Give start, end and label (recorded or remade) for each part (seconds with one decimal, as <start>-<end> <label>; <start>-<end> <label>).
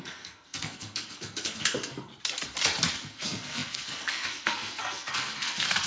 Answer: 0.0-2.1 remade; 2.1-2.9 recorded; 2.9-5.9 remade